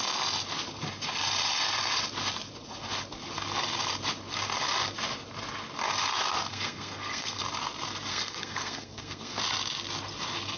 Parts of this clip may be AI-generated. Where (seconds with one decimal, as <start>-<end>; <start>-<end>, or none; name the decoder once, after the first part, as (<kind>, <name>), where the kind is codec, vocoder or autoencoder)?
6.5-7.4 (codec, SNAC); 8.1-9.4